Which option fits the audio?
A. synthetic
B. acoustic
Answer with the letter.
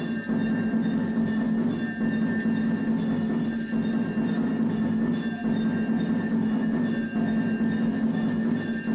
B